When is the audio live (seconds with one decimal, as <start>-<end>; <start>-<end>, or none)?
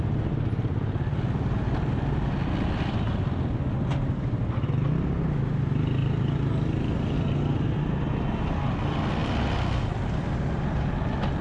0.0-11.4